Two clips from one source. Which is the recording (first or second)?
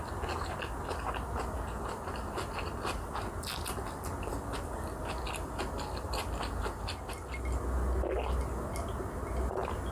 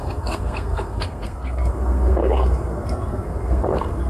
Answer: first